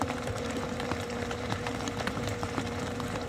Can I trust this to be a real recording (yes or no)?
no